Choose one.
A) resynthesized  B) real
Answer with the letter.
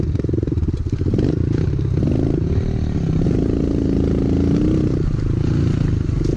B